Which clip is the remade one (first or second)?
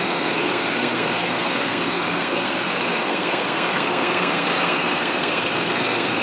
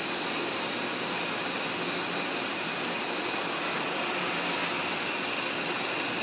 first